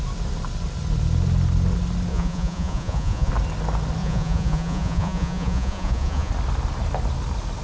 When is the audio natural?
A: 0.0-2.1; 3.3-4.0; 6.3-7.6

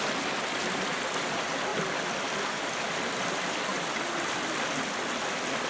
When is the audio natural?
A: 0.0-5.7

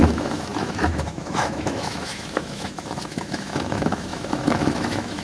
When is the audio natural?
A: none

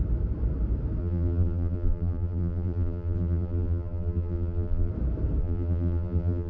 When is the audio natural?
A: 0.0-1.0; 4.9-5.4

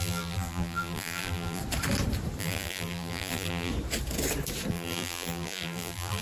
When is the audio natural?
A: 1.6-2.4; 3.7-4.7

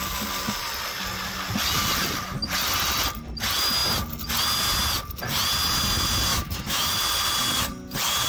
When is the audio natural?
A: 0.0-6.3; 7.0-8.3

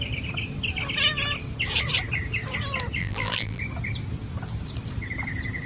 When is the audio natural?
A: 0.0-3.0; 3.6-5.7